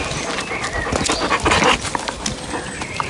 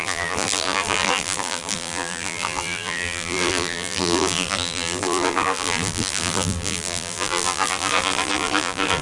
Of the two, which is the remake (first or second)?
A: second